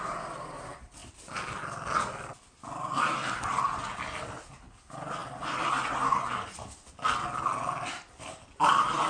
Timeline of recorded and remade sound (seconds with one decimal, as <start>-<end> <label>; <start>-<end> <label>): 0.0-9.1 recorded